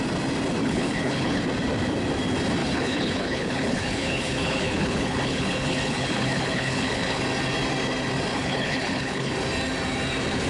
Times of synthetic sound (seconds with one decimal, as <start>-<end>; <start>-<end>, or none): 0.6-1.4; 2.6-7.2; 8.3-9.3